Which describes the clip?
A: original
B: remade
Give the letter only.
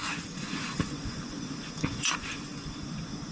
B